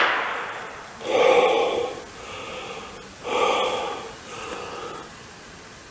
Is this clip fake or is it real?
real